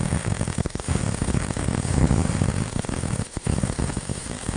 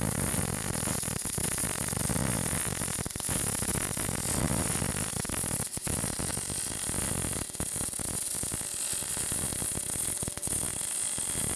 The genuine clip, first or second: second